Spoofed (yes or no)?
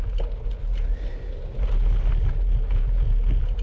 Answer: no